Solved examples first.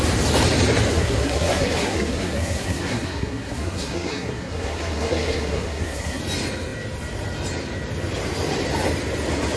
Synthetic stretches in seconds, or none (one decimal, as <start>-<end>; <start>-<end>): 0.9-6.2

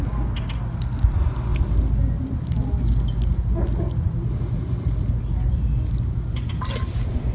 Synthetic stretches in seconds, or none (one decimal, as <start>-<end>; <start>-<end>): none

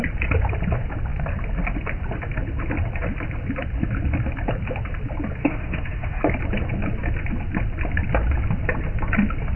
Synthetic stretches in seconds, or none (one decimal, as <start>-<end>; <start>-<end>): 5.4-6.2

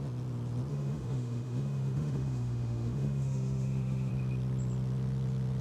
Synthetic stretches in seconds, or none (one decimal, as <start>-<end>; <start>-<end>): 0.7-4.1

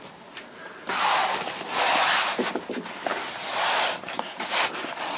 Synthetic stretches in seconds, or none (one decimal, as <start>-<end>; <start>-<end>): 3.1-5.2